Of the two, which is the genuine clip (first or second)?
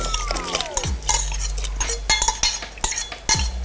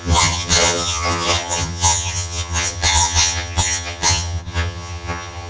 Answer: first